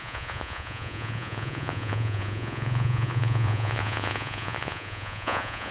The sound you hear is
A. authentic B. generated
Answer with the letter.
B